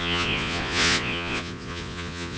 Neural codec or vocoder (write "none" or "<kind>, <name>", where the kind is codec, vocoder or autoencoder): vocoder, Vocos